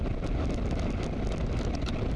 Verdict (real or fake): real